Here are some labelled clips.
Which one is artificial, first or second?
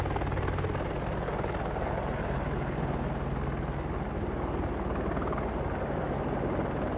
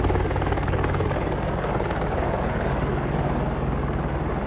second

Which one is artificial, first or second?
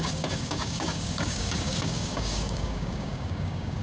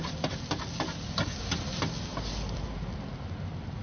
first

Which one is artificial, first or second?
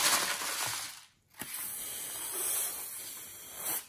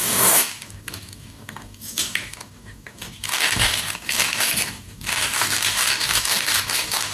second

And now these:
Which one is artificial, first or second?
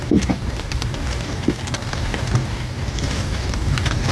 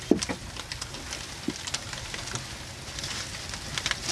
first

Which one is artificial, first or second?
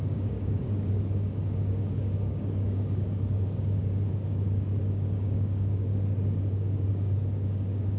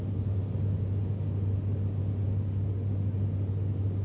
first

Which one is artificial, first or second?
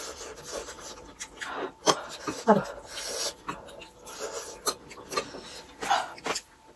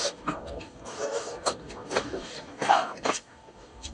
second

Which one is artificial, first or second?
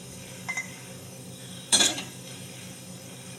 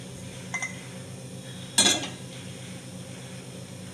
first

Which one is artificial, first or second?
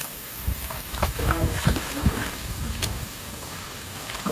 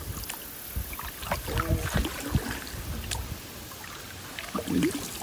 first